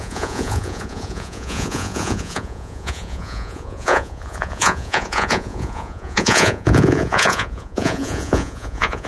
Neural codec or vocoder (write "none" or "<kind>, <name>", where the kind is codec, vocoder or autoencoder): vocoder, Vocos